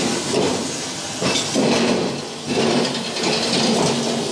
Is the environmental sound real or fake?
real